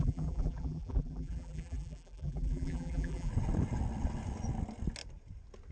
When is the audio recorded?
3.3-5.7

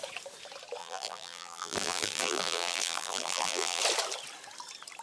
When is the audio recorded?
0.0-0.8; 3.8-5.0

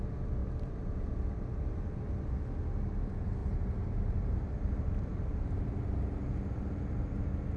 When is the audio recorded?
0.0-0.4; 2.1-3.4; 5.7-7.6

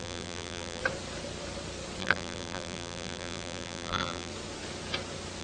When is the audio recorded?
0.8-2.0; 4.3-5.4

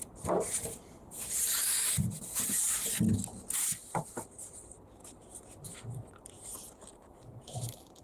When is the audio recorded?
2.8-4.1